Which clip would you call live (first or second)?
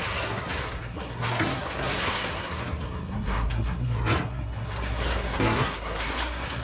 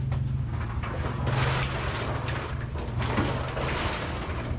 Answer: second